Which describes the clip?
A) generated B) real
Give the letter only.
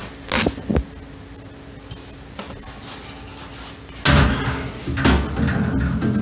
B